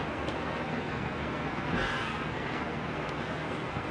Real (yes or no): no